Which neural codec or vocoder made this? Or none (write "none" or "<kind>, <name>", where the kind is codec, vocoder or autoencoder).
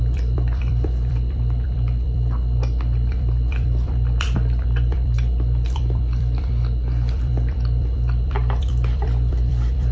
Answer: vocoder, BigVGAN v2